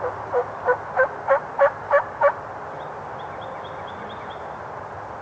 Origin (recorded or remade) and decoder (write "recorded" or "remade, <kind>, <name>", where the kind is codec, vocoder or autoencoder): recorded